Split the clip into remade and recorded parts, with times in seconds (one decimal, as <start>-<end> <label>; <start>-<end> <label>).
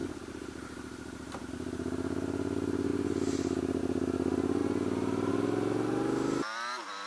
0.0-1.5 remade; 1.5-2.9 recorded; 2.9-3.8 remade; 3.8-7.1 recorded